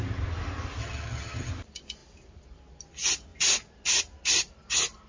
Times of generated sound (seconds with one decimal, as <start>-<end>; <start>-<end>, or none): 0.8-1.5